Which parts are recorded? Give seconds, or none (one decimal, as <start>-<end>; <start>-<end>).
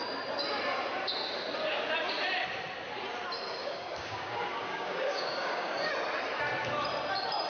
0.0-3.6; 5.9-7.5